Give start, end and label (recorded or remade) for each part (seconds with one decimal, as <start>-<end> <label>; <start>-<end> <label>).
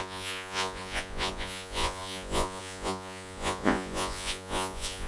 0.0-5.1 remade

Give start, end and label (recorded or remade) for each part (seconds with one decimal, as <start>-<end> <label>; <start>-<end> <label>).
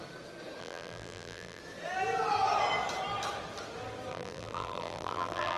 0.0-0.6 recorded; 0.6-1.6 remade; 1.6-4.1 recorded; 4.1-5.6 remade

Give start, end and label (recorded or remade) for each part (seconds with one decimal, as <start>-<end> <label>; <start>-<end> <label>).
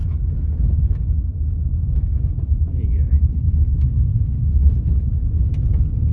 0.0-2.2 recorded; 2.2-3.5 remade; 3.5-4.1 recorded; 4.1-4.8 remade; 4.8-6.1 recorded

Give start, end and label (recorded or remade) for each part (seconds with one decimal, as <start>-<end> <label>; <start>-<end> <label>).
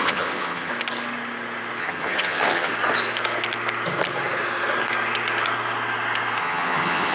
0.0-0.7 remade; 0.7-1.8 recorded; 1.8-2.7 remade; 2.7-6.4 recorded; 6.4-7.1 remade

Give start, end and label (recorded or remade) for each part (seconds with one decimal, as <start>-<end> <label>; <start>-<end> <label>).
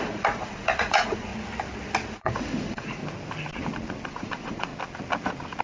0.0-1.3 remade; 1.3-2.1 recorded; 2.1-3.0 remade; 3.0-4.1 recorded; 4.1-4.7 remade; 4.7-5.6 recorded